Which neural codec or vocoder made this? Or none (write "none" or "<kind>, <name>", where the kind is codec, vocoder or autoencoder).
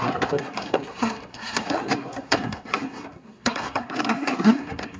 codec, SNAC